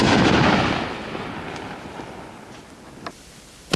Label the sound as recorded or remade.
recorded